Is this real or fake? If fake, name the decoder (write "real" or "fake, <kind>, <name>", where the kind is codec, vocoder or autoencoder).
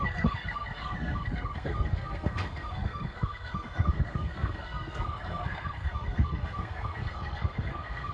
fake, codec, SNAC